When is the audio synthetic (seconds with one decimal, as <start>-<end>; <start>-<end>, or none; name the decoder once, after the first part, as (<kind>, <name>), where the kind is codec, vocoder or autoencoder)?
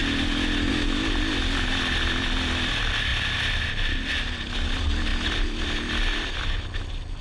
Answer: none